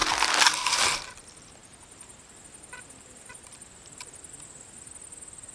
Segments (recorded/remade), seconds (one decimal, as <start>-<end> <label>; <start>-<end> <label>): 0.0-1.6 recorded; 1.6-4.9 remade; 4.9-5.5 recorded